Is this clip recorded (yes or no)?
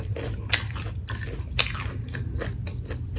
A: yes